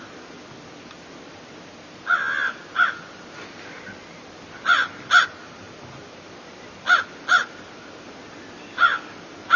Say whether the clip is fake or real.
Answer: real